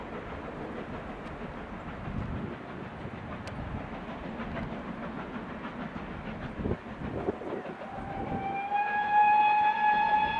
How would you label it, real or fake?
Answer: real